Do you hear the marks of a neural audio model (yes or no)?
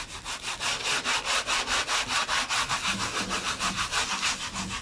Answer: no